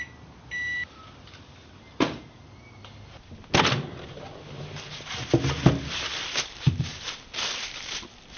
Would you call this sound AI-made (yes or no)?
no